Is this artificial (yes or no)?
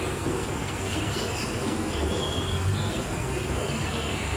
yes